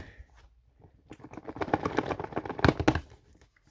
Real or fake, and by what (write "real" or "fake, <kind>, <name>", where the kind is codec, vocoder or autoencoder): real